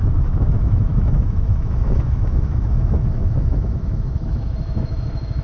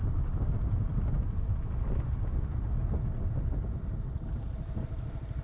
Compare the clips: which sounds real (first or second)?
second